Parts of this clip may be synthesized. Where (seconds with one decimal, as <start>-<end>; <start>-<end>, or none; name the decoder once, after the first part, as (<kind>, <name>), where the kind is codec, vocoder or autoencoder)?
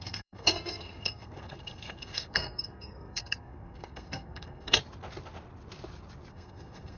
0.0-4.8 (codec, SNAC); 6.3-7.0